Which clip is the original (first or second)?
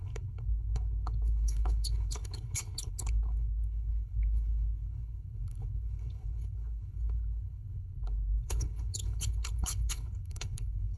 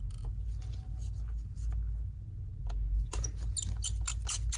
second